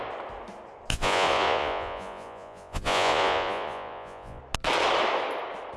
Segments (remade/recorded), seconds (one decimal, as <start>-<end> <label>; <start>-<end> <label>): 0.0-0.9 recorded; 0.9-4.4 remade; 4.4-5.8 recorded